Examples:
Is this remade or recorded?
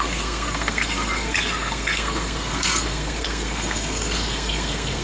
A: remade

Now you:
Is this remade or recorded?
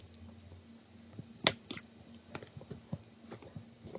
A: recorded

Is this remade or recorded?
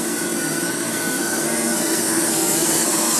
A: remade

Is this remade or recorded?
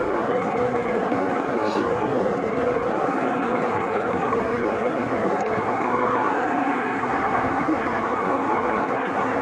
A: remade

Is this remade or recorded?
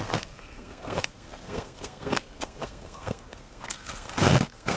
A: remade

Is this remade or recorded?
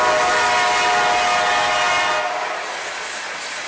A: recorded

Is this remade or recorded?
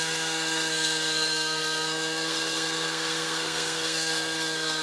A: remade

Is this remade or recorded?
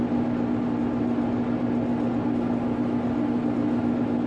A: recorded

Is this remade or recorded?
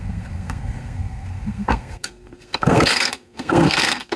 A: remade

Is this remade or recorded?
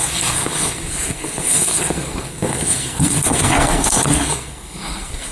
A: remade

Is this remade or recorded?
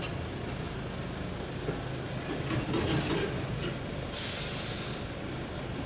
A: recorded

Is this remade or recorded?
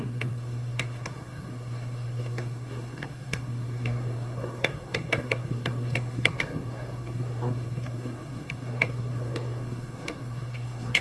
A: remade